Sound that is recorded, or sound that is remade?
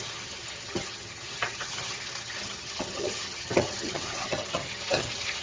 remade